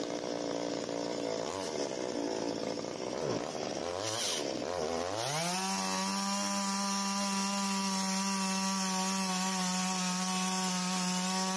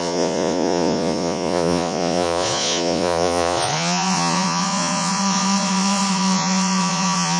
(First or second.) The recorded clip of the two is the first